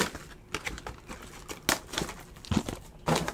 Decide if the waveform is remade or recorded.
recorded